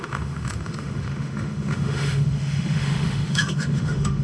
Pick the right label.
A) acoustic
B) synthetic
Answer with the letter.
B